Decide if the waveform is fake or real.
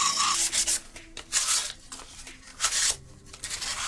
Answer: real